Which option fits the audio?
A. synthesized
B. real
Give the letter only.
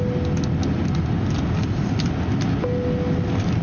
B